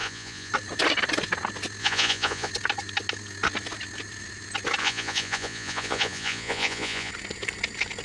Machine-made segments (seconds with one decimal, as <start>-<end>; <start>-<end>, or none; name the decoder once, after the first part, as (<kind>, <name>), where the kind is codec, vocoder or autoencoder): 0.0-0.5 (vocoder, Vocos); 1.8-2.5; 4.8-7.1